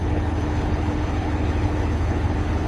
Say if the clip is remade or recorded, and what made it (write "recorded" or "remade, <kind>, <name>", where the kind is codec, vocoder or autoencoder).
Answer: remade, codec, HILCodec